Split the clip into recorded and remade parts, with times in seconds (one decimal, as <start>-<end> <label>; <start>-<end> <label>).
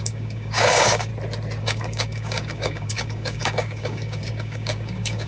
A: 0.0-1.1 remade; 1.1-1.6 recorded; 1.6-5.3 remade